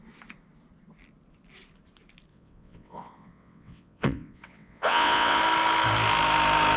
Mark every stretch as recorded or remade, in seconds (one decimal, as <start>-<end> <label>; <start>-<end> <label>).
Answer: 0.0-2.3 recorded; 2.3-5.4 remade; 5.4-6.8 recorded